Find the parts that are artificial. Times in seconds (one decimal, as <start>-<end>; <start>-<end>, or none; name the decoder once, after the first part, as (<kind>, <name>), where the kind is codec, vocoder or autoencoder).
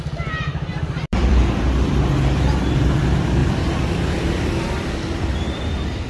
0.5-1.4 (vocoder, BigVGAN v2); 3.4-5.3